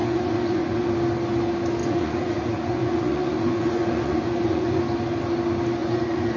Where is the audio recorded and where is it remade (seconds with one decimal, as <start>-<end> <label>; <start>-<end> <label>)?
0.0-0.9 remade; 0.9-1.8 recorded; 1.8-4.8 remade; 4.8-5.8 recorded; 5.8-6.4 remade